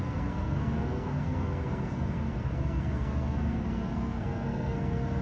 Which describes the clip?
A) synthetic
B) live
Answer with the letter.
A